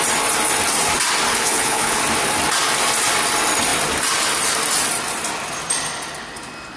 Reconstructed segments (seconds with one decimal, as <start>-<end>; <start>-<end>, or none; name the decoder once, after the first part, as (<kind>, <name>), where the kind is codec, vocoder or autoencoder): 1.3-2.0 (codec, HILCodec)